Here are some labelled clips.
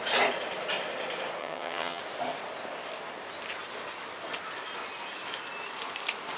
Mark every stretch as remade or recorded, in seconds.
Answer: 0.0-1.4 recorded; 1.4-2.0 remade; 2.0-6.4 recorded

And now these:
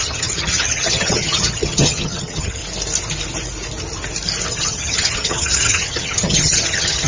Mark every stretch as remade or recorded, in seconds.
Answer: 0.0-2.6 remade; 2.6-4.5 recorded; 4.5-7.1 remade